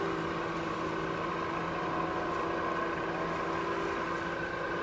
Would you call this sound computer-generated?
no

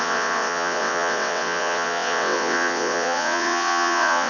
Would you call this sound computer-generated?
yes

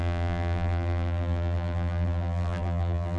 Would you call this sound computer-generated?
yes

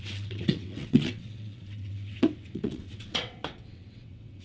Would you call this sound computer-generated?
yes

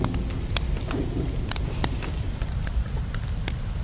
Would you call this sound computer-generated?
no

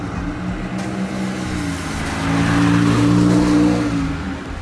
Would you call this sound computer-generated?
no